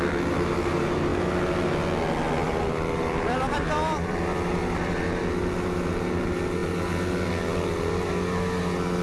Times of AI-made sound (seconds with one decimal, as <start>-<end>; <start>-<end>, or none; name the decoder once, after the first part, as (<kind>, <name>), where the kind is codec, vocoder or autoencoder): 2.4-5.0 (vocoder, BigVGAN v2)